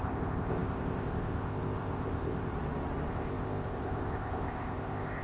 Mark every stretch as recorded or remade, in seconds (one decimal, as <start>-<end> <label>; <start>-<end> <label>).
0.0-2.5 remade; 2.5-3.1 recorded; 3.1-5.2 remade

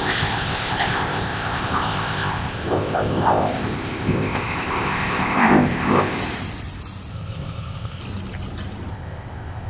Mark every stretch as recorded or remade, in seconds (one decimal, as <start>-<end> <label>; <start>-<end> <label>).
0.0-6.2 remade; 6.2-7.1 recorded; 7.1-8.0 remade; 8.0-8.9 recorded; 8.9-9.7 remade

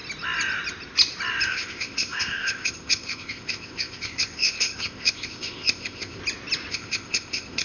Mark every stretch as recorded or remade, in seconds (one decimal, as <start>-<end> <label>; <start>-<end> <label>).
0.0-1.5 recorded; 1.5-6.2 remade; 6.2-6.7 recorded; 6.7-7.6 remade

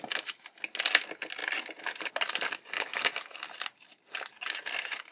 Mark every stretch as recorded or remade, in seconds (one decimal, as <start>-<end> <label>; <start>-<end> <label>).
0.0-5.1 recorded